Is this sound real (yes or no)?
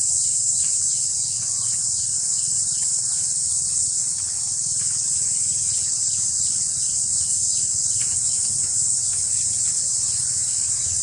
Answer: no